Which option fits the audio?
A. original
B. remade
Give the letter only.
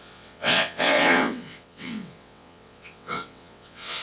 B